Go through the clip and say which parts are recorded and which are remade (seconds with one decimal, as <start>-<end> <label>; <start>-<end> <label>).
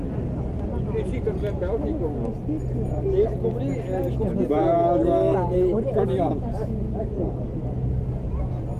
0.0-8.8 recorded